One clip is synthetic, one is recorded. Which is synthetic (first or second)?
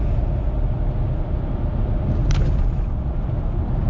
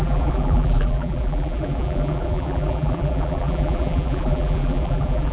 second